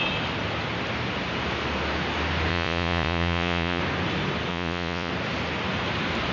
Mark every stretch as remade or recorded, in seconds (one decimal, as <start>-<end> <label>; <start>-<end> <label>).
0.0-2.5 recorded; 2.5-3.8 remade; 3.8-4.5 recorded; 4.5-5.1 remade; 5.1-6.3 recorded